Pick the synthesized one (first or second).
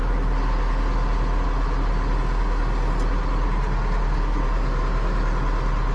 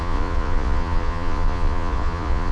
second